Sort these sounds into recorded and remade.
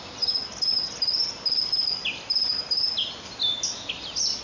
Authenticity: recorded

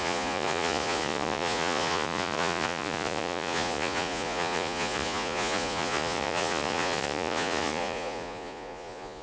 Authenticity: remade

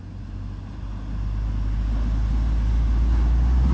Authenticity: recorded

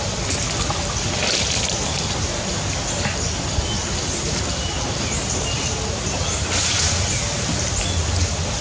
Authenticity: recorded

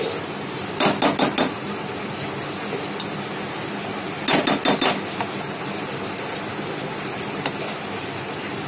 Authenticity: recorded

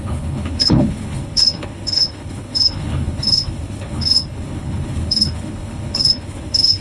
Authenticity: remade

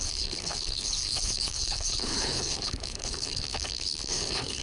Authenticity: remade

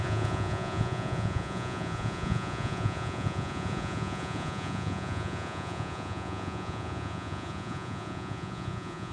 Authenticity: remade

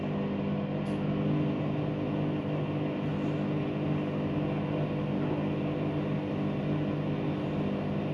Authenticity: recorded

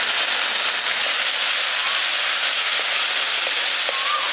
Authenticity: recorded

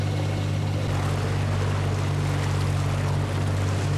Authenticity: recorded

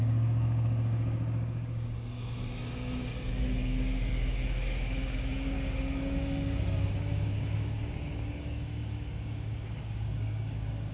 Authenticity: remade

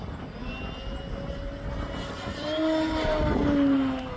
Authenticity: recorded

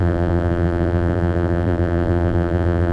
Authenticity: remade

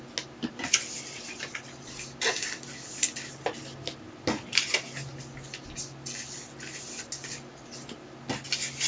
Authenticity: recorded